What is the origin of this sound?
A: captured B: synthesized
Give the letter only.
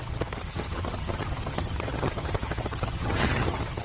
B